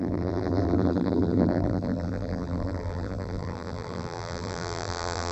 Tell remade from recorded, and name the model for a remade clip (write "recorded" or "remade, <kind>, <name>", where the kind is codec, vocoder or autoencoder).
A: remade, vocoder, BigVGAN v2